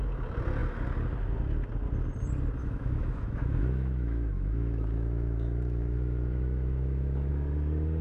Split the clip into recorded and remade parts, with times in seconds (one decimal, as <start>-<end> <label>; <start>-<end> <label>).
0.0-2.6 recorded; 2.6-7.3 remade; 7.3-8.0 recorded